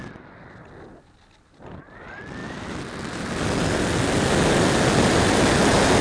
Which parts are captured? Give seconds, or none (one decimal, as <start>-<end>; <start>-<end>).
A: 0.0-6.0